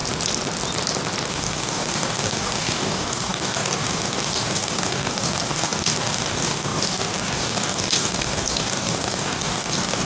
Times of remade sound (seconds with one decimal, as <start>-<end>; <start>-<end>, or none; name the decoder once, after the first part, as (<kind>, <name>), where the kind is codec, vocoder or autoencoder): 1.3-10.0 (codec, DAC)